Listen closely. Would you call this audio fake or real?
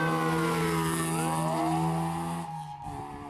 real